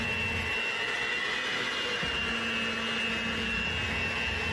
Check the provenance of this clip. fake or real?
real